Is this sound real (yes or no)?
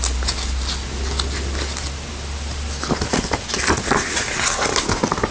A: yes